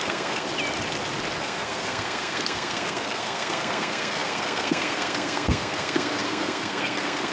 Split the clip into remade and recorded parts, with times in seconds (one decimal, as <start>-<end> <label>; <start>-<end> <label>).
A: 0.0-0.5 remade; 0.5-1.4 recorded; 1.4-7.3 remade